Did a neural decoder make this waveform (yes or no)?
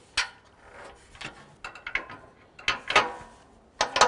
no